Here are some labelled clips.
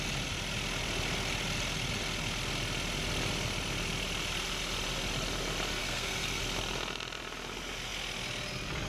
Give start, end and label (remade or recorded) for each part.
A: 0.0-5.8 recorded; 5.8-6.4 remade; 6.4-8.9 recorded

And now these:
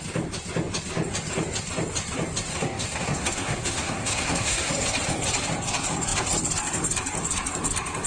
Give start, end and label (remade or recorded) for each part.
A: 0.0-2.5 recorded; 2.5-4.7 remade; 4.7-8.1 recorded

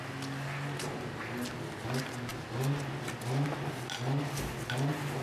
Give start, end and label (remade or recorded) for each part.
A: 0.0-5.2 recorded

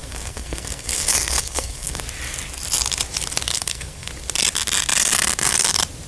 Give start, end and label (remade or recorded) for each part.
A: 0.0-2.0 remade; 2.0-3.5 recorded; 3.5-4.1 remade; 4.1-6.1 recorded

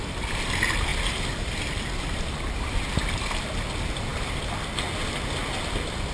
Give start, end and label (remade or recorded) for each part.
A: 0.0-6.1 recorded

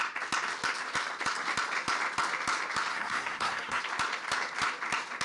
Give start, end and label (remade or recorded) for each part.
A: 0.0-2.9 recorded; 2.9-3.8 remade; 3.8-5.2 recorded